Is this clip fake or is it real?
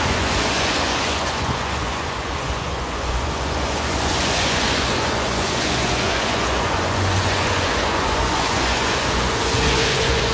fake